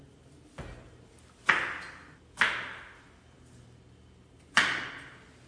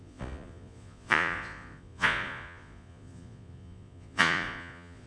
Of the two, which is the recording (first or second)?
first